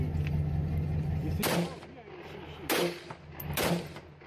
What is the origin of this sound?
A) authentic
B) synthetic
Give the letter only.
A